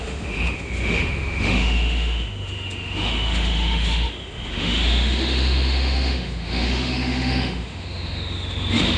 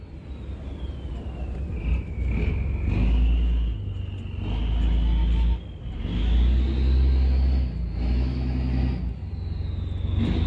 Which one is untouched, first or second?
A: second